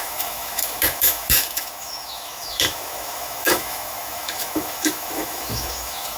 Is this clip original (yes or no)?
no